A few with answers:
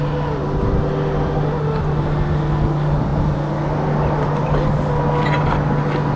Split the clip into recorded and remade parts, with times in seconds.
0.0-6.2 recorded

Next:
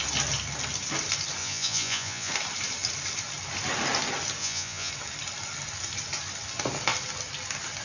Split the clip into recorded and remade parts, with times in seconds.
0.0-1.4 recorded; 1.4-2.3 remade; 2.3-4.4 recorded; 4.4-4.9 remade; 4.9-7.8 recorded

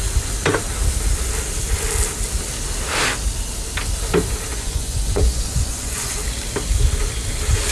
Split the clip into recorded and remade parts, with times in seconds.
0.0-4.5 recorded; 4.5-6.2 remade; 6.2-7.7 recorded